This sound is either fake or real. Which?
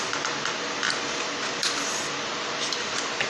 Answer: real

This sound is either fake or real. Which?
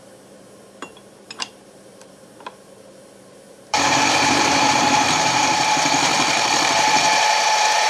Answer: fake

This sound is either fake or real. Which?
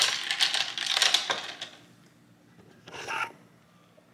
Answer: real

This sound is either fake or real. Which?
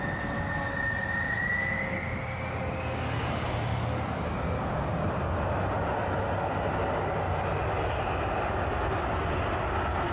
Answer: real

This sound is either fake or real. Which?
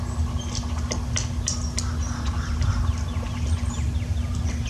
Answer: fake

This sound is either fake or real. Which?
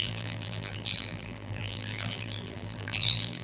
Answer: fake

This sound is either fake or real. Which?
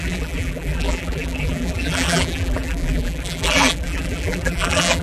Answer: fake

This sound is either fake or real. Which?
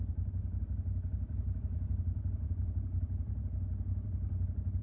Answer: fake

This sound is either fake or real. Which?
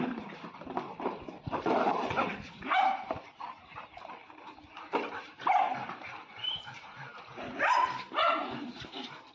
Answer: fake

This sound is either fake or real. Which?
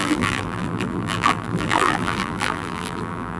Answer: fake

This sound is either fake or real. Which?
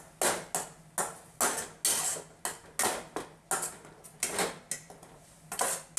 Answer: real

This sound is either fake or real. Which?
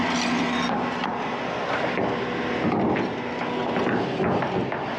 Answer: real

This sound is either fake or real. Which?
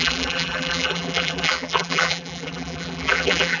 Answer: fake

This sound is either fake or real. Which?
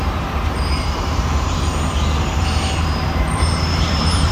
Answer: fake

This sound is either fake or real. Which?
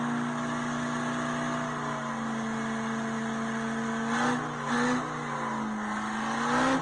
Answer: real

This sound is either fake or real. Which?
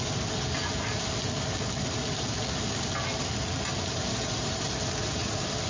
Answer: real